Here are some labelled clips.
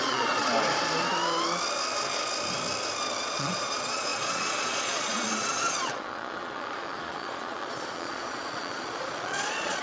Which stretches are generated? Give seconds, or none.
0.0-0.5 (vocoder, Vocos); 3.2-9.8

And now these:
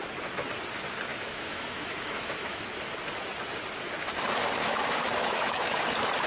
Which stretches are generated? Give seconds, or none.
1.1-2.6 (autoencoder, DAC-VAE); 4.6-5.8